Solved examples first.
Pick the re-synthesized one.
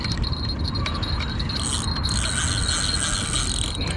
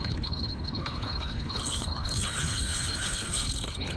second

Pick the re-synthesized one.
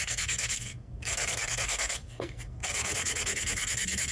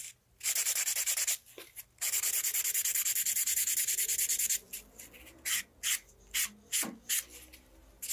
first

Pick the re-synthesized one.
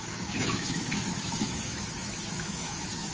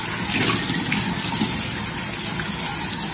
first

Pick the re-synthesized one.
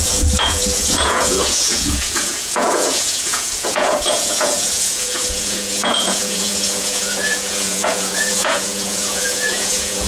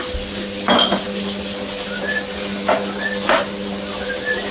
first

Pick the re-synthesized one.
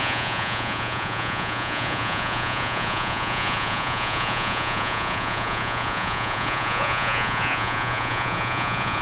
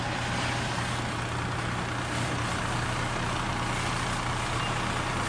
first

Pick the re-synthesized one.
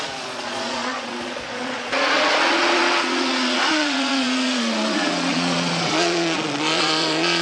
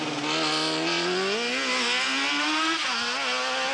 first